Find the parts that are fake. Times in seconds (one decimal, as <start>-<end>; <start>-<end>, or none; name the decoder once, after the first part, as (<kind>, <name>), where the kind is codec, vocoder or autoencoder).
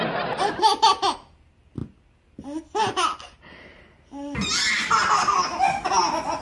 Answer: none